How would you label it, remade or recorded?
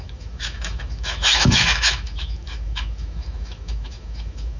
remade